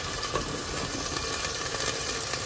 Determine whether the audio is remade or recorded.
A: recorded